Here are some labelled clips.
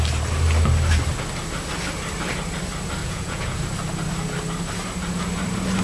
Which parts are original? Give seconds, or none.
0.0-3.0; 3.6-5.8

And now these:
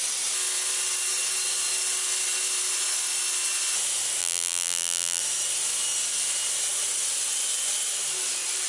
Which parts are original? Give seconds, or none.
0.0-4.2; 5.2-8.7

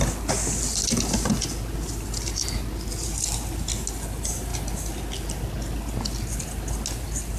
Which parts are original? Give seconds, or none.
0.0-7.4

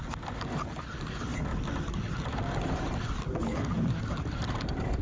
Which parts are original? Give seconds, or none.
0.0-5.0

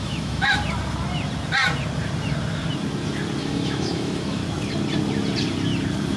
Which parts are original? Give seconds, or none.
0.6-3.4; 4.4-6.2

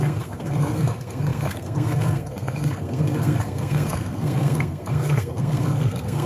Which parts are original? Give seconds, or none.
none

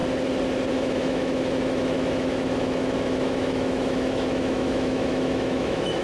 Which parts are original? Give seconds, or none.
0.0-0.7

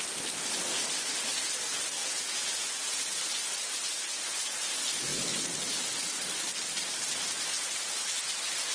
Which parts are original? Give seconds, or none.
0.0-2.0; 3.2-8.7